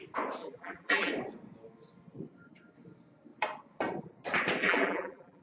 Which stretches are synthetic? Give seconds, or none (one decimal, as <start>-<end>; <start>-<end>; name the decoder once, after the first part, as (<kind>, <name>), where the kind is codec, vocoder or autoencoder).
0.4-1.1 (vocoder, BigVGAN v2); 4.6-5.4